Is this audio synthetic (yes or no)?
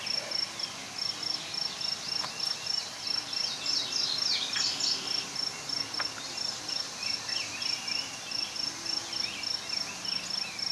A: no